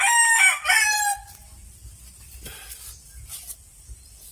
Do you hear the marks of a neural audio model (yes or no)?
no